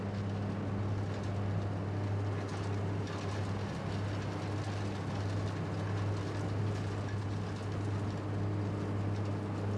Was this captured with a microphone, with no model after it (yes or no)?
yes